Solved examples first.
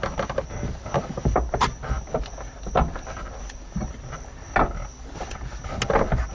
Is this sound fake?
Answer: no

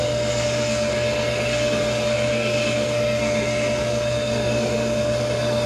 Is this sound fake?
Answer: yes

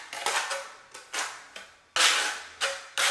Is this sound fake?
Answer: no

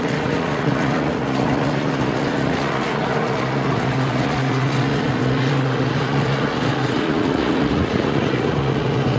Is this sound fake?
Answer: yes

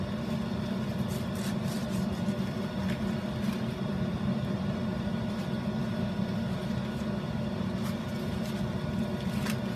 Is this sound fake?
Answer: no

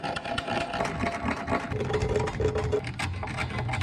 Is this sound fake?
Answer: no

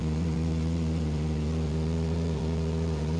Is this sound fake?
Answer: yes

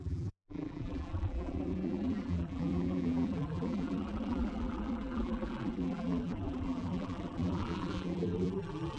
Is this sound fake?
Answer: yes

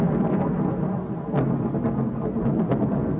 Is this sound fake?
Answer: no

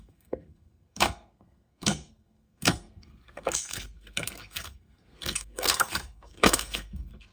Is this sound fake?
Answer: yes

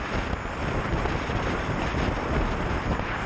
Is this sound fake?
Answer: no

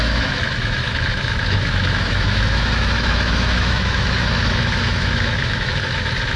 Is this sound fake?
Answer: yes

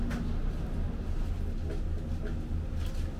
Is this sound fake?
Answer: no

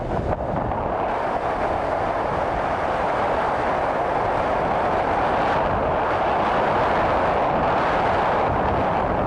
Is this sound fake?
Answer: no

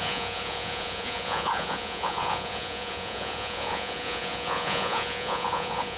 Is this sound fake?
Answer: yes